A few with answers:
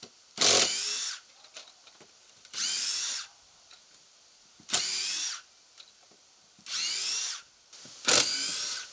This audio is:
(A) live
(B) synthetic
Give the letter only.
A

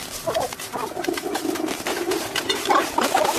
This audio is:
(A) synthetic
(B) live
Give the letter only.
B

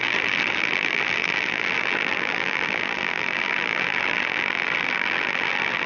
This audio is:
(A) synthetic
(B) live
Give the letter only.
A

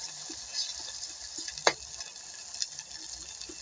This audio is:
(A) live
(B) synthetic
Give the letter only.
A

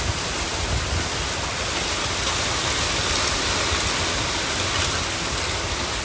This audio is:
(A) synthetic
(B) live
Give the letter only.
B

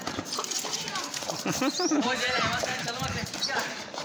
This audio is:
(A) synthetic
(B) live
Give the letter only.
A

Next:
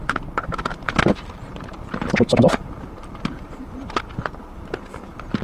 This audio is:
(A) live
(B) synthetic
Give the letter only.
B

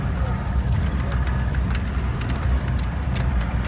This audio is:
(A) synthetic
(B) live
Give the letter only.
A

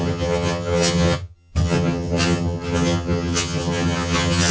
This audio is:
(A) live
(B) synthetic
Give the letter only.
B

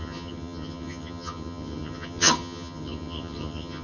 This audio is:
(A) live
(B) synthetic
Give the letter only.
B